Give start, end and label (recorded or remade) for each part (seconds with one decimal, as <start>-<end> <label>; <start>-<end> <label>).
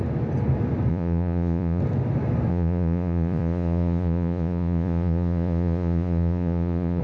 0.0-0.9 recorded; 0.9-1.8 remade; 1.8-2.5 recorded; 2.5-7.0 remade